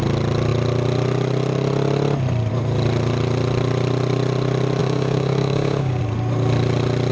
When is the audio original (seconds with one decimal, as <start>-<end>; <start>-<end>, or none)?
0.0-4.8; 6.0-7.1